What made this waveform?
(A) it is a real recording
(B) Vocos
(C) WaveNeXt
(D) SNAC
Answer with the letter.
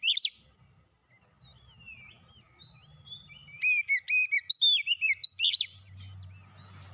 A